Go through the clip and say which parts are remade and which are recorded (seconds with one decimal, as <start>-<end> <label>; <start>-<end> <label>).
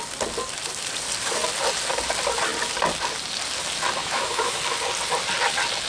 0.0-4.0 recorded; 4.0-4.6 remade; 4.6-5.9 recorded